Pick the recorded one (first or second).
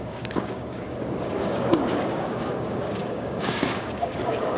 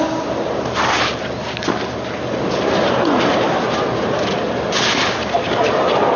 second